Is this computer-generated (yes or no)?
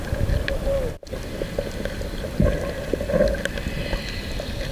no